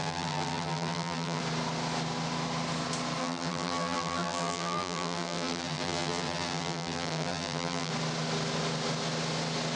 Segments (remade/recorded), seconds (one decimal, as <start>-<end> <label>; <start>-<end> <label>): 0.0-1.4 remade; 1.4-3.2 recorded; 3.2-7.9 remade; 7.9-9.8 recorded